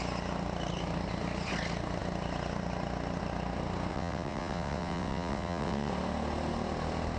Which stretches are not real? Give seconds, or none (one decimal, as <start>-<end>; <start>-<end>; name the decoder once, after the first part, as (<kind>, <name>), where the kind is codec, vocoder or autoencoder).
3.9-5.9 (vocoder, WaveNeXt)

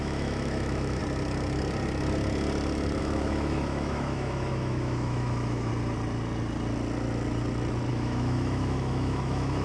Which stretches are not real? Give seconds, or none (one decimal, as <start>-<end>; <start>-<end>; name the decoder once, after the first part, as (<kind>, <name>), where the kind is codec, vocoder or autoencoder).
0.0-1.0 (autoencoder, DAC-VAE); 3.0-5.7; 7.9-9.6

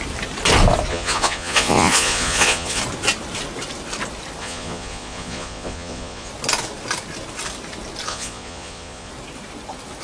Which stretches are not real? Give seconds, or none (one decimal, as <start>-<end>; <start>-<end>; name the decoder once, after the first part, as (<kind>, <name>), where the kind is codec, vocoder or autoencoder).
0.9-2.8 (vocoder, Vocos); 4.4-6.3; 8.1-9.1